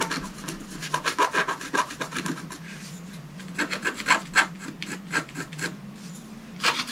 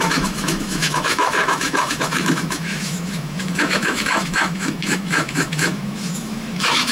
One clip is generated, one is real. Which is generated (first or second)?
second